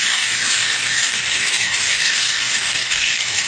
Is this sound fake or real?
fake